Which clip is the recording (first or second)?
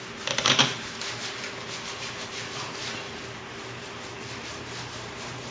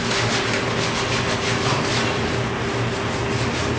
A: second